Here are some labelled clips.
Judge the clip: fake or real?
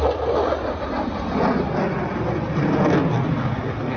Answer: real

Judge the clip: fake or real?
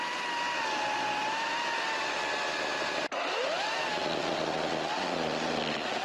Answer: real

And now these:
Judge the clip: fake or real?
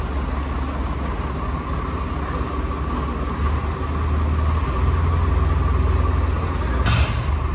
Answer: real